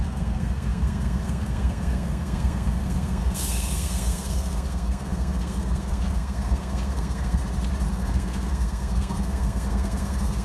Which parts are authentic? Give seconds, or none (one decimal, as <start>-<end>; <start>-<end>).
7.4-7.9